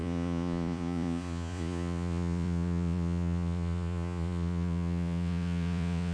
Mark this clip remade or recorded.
remade